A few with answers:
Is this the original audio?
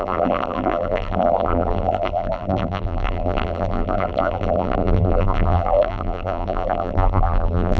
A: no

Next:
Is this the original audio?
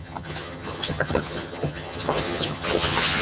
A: no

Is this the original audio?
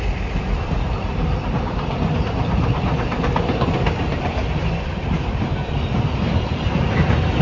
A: no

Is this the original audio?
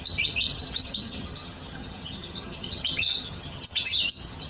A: no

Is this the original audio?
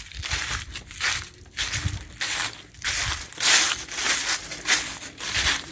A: yes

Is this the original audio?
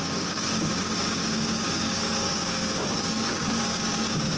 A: no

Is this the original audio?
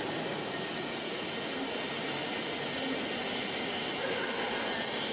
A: yes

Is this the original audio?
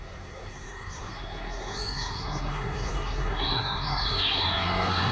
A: no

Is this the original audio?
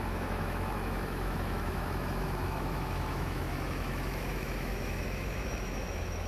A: no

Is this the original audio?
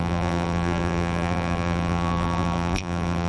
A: no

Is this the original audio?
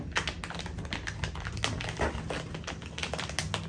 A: yes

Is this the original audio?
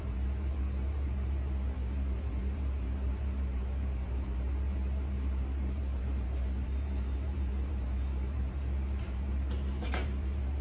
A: no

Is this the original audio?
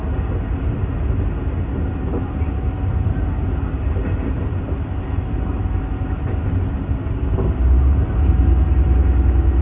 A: yes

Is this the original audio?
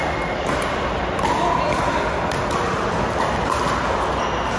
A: yes